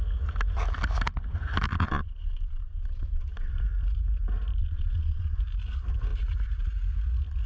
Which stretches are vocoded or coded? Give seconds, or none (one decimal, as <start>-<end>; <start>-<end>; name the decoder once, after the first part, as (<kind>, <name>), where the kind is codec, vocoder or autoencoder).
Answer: 1.7-3.5 (vocoder, Vocos); 4.6-5.4